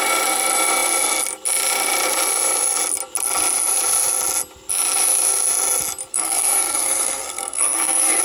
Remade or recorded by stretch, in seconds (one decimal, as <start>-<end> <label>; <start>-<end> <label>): 0.0-6.1 recorded; 6.1-8.2 remade